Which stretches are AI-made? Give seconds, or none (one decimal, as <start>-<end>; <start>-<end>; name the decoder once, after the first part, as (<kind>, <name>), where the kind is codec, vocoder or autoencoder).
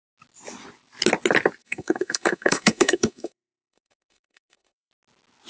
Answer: 1.6-4.9 (codec, SNAC)